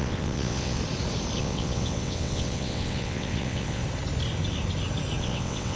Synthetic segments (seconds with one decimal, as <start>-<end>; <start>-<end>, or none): 0.0-0.8; 1.4-3.8; 5.2-5.8